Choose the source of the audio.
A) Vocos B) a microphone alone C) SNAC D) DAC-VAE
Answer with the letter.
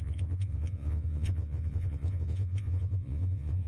A